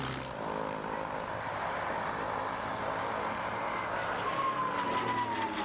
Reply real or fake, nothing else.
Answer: real